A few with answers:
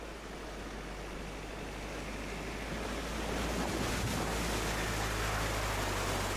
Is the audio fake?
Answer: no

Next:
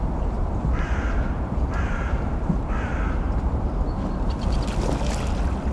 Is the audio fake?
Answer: no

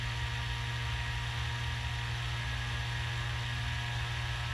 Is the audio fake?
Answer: no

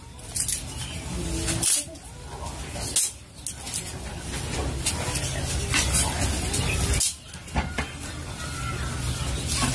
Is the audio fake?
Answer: no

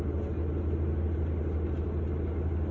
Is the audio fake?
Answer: no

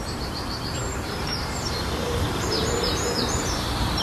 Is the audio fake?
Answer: yes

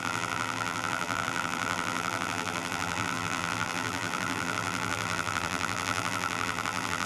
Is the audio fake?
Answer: yes